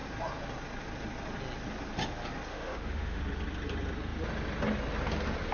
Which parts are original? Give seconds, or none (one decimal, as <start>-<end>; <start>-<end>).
0.0-2.5; 3.2-5.5